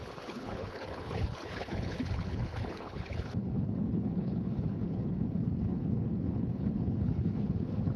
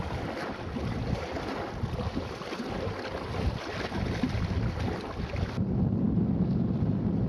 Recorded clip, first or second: second